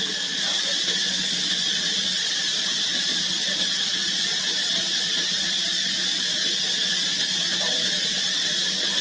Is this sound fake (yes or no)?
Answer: yes